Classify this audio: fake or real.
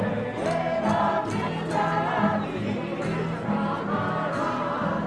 real